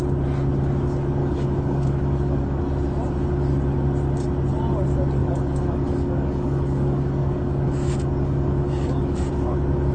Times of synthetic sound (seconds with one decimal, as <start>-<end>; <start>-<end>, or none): 1.2-2.6; 5.2-9.3

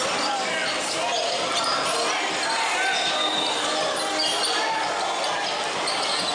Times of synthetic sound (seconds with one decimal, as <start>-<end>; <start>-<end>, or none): none

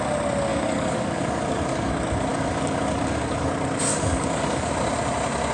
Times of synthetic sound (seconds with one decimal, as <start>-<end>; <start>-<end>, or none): 0.5-1.9; 2.3-3.5; 3.9-4.7

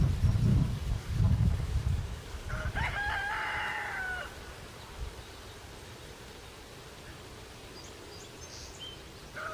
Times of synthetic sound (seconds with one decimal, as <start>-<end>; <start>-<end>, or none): 0.5-2.5

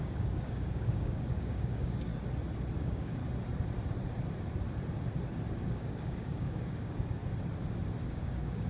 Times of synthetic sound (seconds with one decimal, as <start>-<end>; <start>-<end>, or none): 0.0-2.1; 2.8-3.2; 5.6-7.2; 8.1-8.7

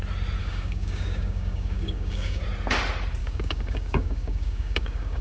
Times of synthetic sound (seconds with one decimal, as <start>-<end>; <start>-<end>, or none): 0.4-2.4; 3.2-5.2

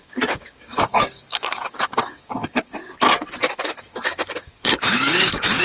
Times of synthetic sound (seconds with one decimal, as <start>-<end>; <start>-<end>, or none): 0.0-2.8; 3.6-5.6

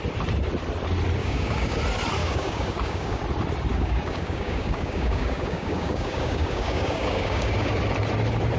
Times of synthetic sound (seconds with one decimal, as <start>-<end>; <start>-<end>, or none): 1.2-1.8; 2.2-3.2; 3.7-7.8